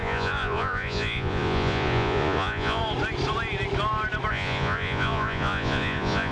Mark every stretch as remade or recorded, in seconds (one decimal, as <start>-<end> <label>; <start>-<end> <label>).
0.0-2.8 remade; 2.8-4.3 recorded; 4.3-6.3 remade